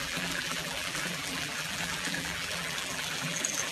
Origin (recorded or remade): remade